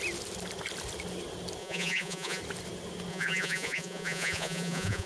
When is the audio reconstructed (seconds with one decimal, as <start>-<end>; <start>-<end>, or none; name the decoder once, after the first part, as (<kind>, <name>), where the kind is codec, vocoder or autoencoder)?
1.6-2.4 (vocoder, Vocos); 3.1-5.1